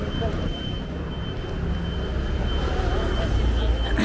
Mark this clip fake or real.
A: real